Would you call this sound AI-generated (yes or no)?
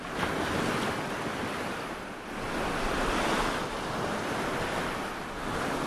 no